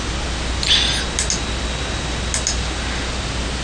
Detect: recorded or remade recorded